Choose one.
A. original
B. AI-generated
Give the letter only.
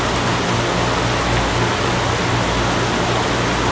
A